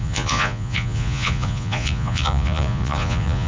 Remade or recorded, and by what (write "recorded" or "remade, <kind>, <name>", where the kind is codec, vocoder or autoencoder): remade, vocoder, Vocos